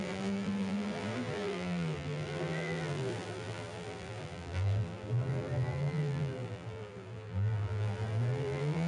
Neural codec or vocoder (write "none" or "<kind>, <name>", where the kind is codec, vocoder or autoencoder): vocoder, BigVGAN v2